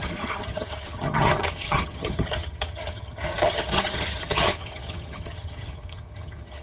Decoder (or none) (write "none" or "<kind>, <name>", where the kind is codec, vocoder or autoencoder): vocoder, HiFi-GAN